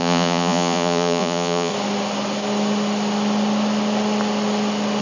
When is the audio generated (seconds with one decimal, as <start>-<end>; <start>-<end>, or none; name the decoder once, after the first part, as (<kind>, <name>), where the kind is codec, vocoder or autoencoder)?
0.0-1.7 (vocoder, Vocos)